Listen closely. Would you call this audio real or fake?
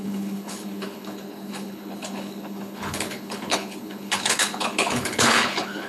fake